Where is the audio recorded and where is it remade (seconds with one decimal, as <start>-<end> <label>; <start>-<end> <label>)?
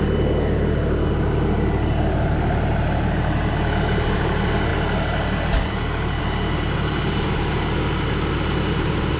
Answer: 0.0-9.2 recorded